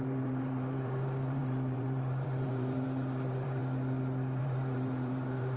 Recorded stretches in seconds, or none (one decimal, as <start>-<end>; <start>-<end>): 3.6-4.4